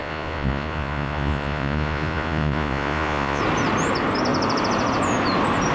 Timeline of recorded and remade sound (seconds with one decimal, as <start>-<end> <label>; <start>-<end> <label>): 0.0-3.4 remade; 3.4-5.7 recorded